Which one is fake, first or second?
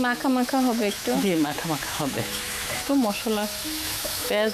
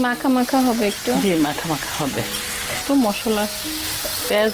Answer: first